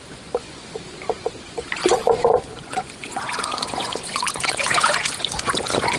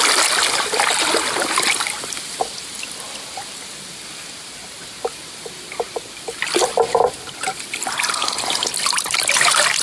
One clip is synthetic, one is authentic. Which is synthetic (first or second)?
first